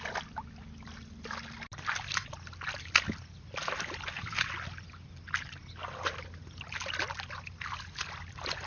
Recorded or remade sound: recorded